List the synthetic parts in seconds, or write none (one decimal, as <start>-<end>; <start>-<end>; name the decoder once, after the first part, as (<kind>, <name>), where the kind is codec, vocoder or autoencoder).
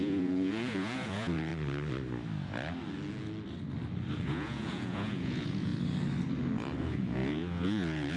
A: 0.0-1.5 (vocoder, Vocos); 4.1-5.7; 6.8-8.2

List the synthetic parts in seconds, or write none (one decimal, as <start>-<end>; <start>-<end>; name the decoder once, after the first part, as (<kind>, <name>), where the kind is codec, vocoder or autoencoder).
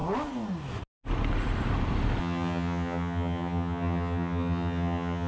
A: 2.2-5.3 (vocoder, HiFi-GAN)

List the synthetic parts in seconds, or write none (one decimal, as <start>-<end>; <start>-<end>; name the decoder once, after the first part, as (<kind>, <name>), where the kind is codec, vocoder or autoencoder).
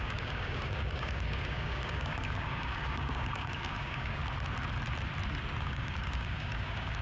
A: 0.0-4.2 (codec, DAC); 5.6-7.0